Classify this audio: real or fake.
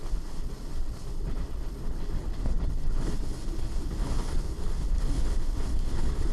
fake